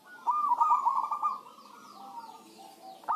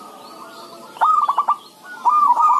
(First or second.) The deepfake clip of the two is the second